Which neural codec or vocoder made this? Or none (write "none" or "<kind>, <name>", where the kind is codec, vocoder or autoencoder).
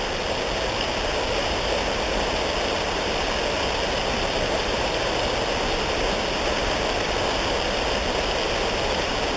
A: none